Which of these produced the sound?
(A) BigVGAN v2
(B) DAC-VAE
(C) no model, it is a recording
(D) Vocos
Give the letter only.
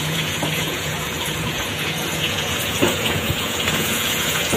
D